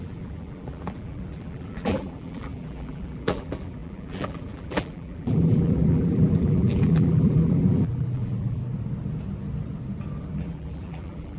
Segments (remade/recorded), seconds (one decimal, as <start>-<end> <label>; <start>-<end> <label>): 0.0-8.6 remade; 8.6-10.2 recorded; 10.2-11.4 remade